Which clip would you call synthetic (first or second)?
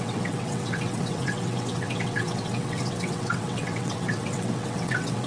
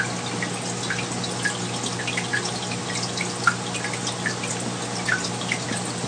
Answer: first